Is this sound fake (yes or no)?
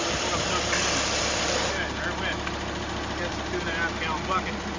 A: no